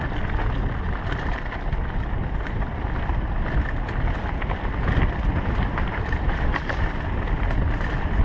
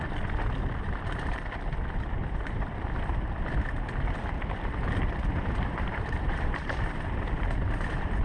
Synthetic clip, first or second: second